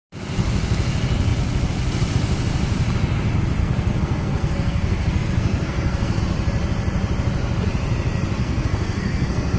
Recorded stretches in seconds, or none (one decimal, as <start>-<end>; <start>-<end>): 0.0-3.6; 6.2-8.4